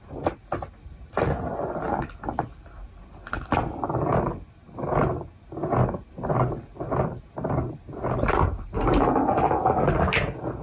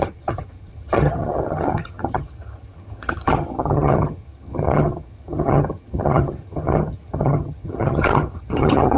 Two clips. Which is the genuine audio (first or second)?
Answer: first